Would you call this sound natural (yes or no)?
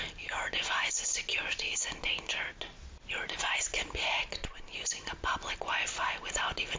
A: yes